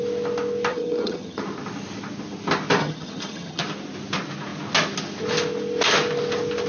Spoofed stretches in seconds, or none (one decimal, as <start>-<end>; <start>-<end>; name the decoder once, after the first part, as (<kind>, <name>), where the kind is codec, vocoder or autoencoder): 0.7-1.4 (vocoder, HiFi-GAN); 2.8-3.6